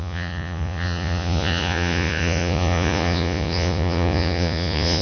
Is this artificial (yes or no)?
yes